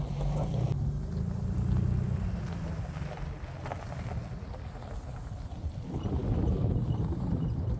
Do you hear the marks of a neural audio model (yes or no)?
no